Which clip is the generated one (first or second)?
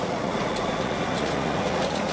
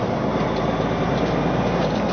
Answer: first